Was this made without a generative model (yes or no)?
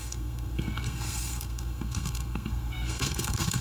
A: no